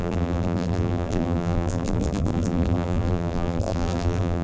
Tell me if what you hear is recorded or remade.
remade